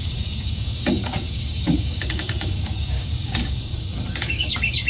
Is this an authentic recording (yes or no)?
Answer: no